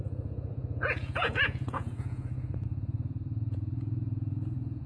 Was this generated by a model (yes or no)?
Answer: yes